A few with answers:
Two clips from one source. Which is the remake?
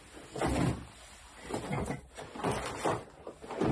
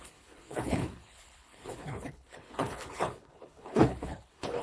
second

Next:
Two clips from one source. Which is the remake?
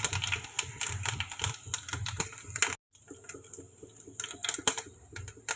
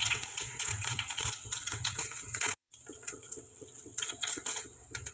second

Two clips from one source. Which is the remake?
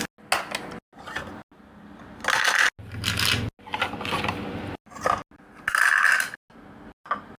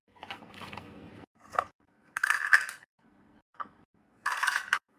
second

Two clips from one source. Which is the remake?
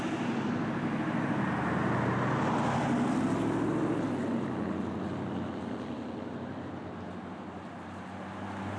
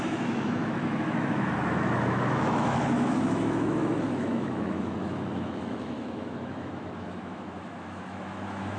second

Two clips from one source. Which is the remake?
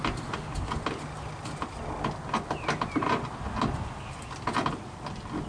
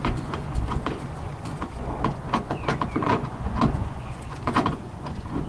second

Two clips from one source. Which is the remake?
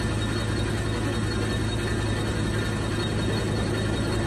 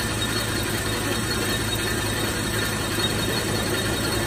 second